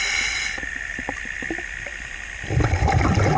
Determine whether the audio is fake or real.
real